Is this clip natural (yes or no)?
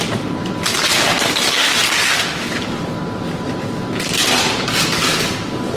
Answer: yes